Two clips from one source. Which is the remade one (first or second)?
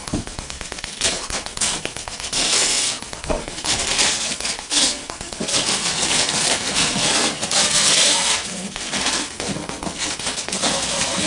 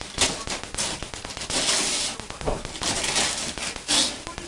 first